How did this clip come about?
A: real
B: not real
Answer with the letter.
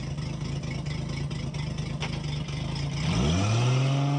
A